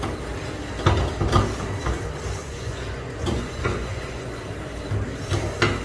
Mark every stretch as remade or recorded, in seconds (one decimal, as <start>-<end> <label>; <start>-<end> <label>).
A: 0.0-2.4 recorded; 2.4-4.4 remade; 4.4-5.8 recorded